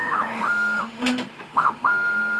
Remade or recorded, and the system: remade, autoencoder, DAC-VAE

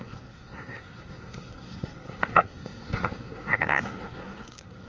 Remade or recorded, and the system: remade, codec, SNAC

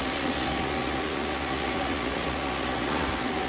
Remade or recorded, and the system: remade, vocoder, Vocos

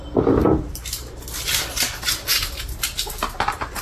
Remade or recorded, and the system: recorded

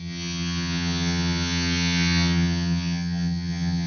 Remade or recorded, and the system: remade, vocoder, HiFi-GAN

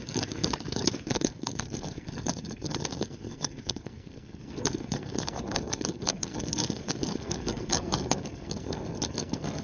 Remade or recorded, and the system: remade, codec, SNAC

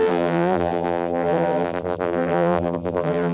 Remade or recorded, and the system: remade, vocoder, BigVGAN v2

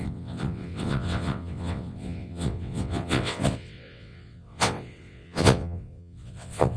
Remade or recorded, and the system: remade, vocoder, WaveNeXt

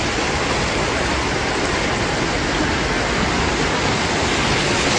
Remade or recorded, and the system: recorded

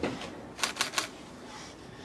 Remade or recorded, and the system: recorded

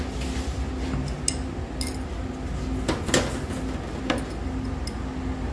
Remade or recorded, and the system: recorded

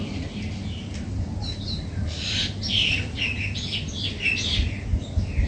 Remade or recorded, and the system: recorded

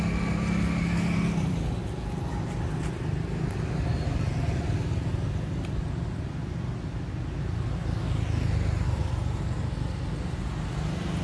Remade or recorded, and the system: recorded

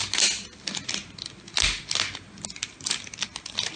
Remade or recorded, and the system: recorded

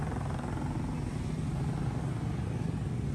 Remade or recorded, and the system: recorded